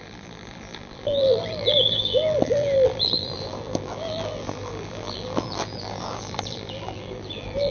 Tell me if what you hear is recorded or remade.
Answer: remade